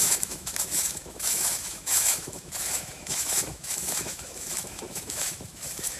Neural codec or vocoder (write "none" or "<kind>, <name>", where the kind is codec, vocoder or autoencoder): autoencoder, DAC-VAE